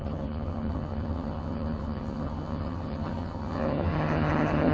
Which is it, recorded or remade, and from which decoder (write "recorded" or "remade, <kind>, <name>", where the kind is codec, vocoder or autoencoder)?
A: remade, vocoder, HiFi-GAN